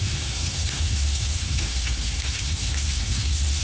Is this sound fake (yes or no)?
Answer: yes